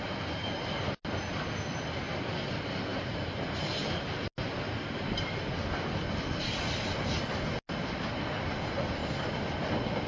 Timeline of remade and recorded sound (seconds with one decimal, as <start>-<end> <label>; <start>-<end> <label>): 0.0-10.1 recorded